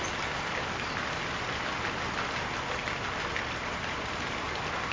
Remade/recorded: recorded